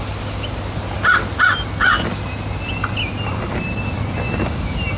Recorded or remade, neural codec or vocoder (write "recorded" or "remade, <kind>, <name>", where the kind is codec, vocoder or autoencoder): recorded